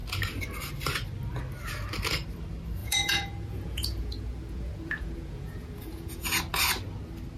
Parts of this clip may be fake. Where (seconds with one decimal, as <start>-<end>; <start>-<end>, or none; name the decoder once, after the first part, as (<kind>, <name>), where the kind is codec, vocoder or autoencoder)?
2.8-6.4 (vocoder, Vocos)